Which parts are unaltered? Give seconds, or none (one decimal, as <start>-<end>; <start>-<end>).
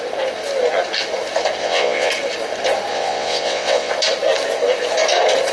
0.0-1.6; 2.1-2.9; 3.9-5.5